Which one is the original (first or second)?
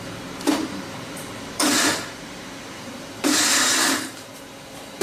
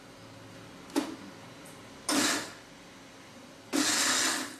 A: second